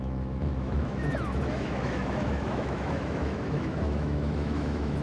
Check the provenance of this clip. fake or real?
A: fake